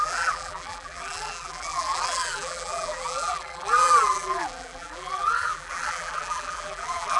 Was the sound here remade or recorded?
remade